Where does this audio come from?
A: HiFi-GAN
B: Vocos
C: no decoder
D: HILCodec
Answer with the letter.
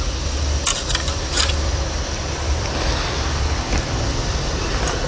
C